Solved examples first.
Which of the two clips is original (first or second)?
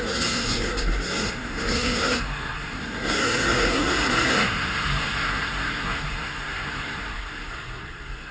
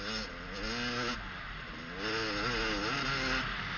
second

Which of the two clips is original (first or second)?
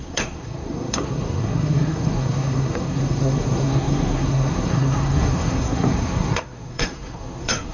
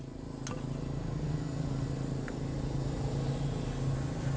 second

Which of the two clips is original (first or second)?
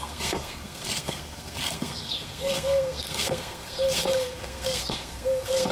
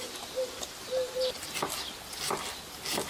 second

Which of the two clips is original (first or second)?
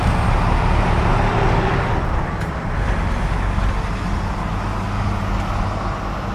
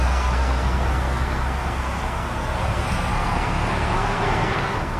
first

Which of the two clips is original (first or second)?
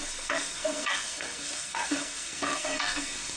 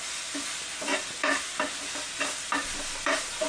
second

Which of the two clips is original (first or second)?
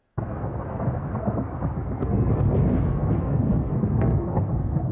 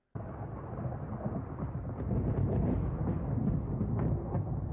second